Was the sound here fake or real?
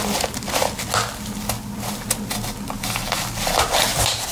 real